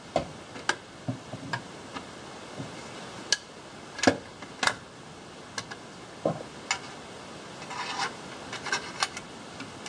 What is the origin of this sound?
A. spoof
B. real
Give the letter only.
B